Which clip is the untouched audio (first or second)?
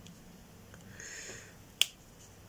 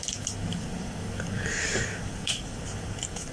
first